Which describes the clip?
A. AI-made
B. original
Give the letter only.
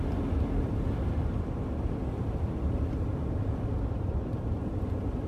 A